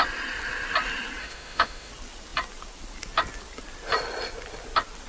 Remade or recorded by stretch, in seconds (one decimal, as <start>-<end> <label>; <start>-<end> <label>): 0.0-1.2 recorded; 1.2-1.9 remade; 1.9-5.1 recorded